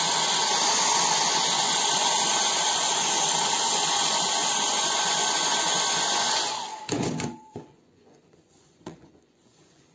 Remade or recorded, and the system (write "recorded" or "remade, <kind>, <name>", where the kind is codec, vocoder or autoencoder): remade, vocoder, Vocos